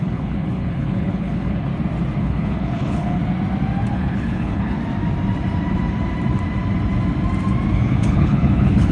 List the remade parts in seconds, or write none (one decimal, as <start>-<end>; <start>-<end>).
0.0-1.7; 2.2-3.2; 3.9-4.8; 7.7-8.9